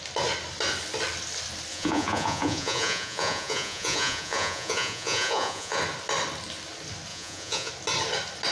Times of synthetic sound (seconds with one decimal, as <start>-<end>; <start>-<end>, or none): 1.7-5.8; 7.1-7.7